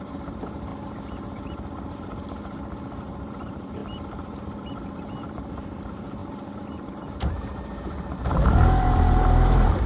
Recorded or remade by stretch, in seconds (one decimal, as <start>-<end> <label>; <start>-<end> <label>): 0.0-0.7 remade; 0.7-3.0 recorded; 3.0-3.8 remade; 3.8-4.6 recorded; 4.6-9.9 remade